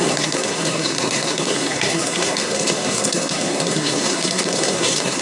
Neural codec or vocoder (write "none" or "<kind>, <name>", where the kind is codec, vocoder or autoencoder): codec, SNAC